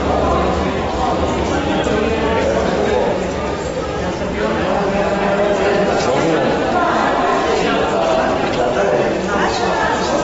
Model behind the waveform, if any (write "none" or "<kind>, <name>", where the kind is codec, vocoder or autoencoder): none